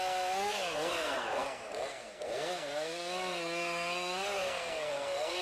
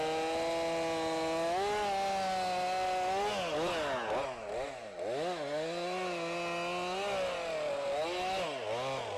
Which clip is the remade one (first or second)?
first